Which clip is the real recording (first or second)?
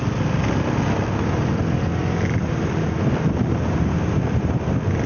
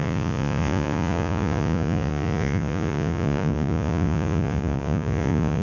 first